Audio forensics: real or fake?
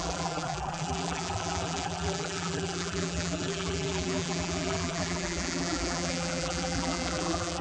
fake